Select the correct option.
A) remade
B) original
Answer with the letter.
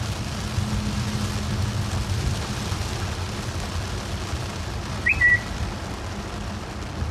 B